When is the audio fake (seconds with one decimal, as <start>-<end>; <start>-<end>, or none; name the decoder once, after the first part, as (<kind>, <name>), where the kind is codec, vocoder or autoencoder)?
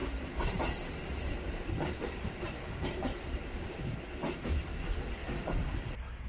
0.0-3.8 (vocoder, BigVGAN v2); 4.2-4.7; 5.2-6.3